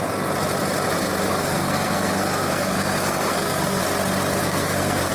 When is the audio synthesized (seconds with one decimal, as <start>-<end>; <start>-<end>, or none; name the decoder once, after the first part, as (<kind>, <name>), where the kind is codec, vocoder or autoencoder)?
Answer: 1.3-3.8 (codec, SNAC); 4.4-5.1